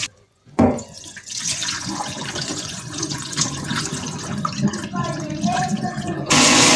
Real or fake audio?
fake